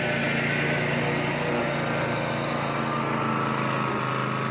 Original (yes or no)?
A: yes